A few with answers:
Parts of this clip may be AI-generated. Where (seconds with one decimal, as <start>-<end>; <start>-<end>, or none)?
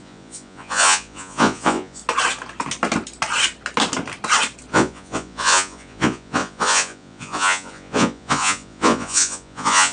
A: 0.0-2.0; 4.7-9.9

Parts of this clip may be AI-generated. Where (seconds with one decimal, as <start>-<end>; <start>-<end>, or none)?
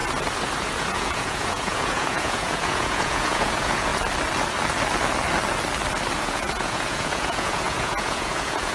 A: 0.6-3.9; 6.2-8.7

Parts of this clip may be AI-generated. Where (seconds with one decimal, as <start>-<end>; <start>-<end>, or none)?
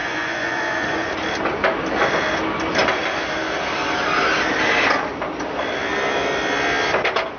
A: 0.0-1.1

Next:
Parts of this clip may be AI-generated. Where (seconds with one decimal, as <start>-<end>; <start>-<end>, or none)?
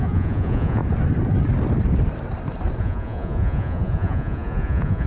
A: 0.0-0.8; 2.8-5.1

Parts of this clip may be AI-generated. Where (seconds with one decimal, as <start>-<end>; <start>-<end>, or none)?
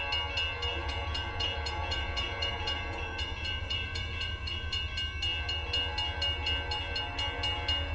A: 0.8-4.8